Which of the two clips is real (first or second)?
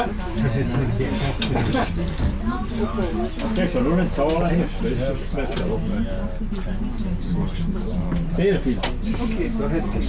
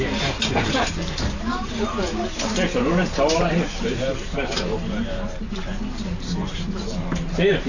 first